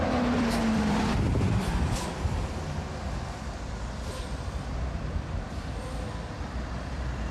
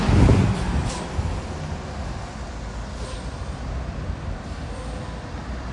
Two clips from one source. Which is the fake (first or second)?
first